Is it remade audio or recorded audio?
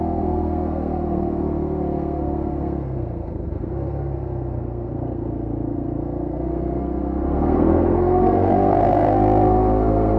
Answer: remade